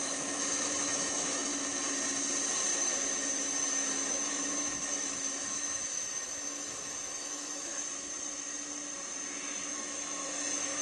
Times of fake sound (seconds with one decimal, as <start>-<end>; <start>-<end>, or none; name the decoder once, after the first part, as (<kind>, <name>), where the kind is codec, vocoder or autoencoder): 0.0-1.5 (autoencoder, DAC-VAE); 2.8-7.7; 9.7-10.8